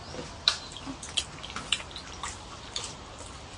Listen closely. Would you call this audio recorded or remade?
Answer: recorded